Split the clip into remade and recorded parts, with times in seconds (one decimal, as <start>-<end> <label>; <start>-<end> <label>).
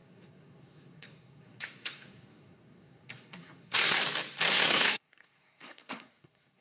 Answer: 0.0-4.0 remade; 4.0-4.5 recorded; 4.5-6.6 remade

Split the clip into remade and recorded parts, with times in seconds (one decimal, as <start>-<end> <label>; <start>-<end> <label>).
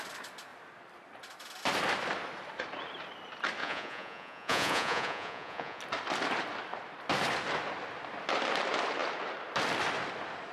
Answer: 0.0-3.6 recorded; 3.6-5.8 remade; 5.8-10.5 recorded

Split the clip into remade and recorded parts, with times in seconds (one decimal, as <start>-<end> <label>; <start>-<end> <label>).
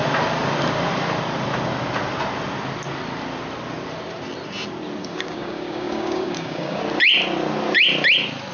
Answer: 0.0-5.0 recorded; 5.0-6.8 remade; 6.8-8.5 recorded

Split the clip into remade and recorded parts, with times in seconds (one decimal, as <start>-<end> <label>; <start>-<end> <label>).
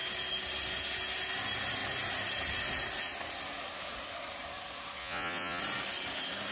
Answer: 0.0-5.0 recorded; 5.0-5.6 remade; 5.6-6.5 recorded